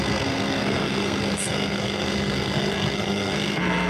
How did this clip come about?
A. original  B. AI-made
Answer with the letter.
B